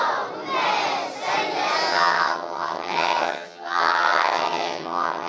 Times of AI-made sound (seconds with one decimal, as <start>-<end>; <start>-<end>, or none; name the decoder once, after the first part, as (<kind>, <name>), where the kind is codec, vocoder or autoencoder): 1.9-5.3 (vocoder, HiFi-GAN)